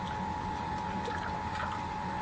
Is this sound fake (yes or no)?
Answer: no